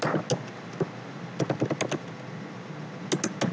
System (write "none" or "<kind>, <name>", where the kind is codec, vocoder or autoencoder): none